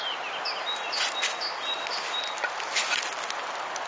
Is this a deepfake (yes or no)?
no